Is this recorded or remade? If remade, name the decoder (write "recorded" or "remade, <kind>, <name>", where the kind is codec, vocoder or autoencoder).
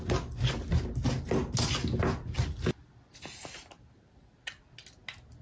recorded